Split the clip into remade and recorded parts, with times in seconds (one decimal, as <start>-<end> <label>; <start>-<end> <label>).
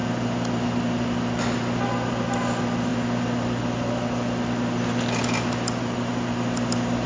0.0-7.1 recorded